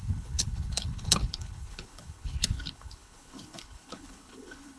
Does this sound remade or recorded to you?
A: remade